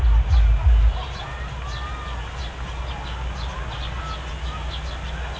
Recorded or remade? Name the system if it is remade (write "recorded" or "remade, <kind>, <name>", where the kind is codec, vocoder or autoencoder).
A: recorded